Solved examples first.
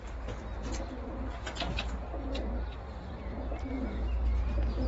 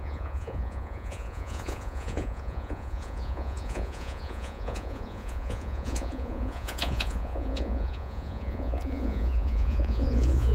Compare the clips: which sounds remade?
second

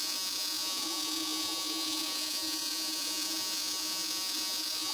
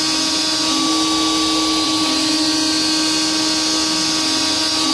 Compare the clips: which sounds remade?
first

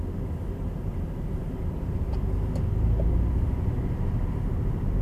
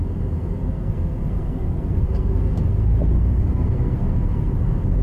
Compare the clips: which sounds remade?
second